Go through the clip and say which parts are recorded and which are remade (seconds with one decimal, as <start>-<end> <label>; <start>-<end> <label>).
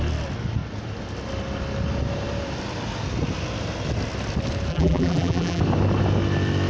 0.0-4.7 recorded; 4.7-5.6 remade; 5.6-6.7 recorded